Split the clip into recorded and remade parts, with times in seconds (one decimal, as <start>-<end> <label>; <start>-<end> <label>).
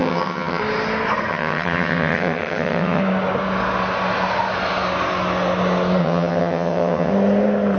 0.0-0.6 remade; 0.6-1.3 recorded; 1.3-3.0 remade; 3.0-6.0 recorded; 6.0-7.1 remade; 7.1-7.8 recorded